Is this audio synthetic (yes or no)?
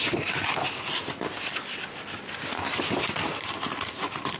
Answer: no